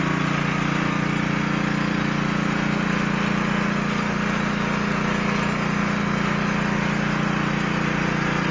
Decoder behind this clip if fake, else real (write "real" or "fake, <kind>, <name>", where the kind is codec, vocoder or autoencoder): real